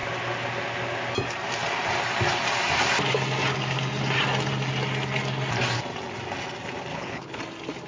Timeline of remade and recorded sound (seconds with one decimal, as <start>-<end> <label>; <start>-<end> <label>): 0.0-6.9 recorded; 6.9-7.4 remade; 7.4-7.9 recorded

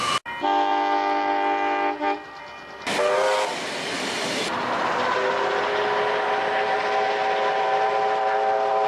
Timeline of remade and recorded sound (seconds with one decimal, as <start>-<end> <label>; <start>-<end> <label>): 0.0-8.9 recorded